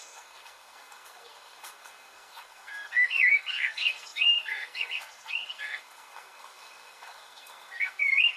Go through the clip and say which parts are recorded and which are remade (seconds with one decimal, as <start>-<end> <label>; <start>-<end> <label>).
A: 0.0-8.4 remade